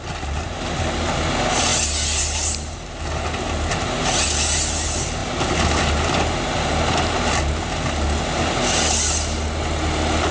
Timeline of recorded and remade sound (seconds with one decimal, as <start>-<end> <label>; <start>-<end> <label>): 0.0-10.3 recorded